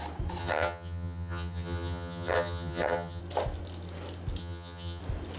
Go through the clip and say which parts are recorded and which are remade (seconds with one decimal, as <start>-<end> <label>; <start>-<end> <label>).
0.0-0.4 recorded; 0.4-3.2 remade; 3.2-4.4 recorded; 4.4-5.0 remade; 5.0-5.4 recorded